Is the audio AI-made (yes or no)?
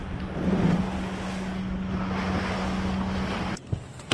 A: no